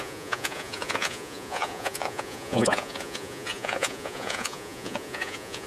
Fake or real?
fake